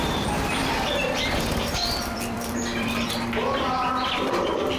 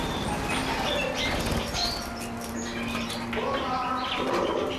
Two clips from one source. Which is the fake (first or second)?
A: first